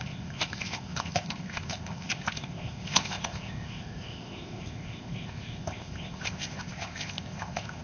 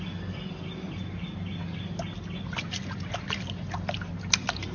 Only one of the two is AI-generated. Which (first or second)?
first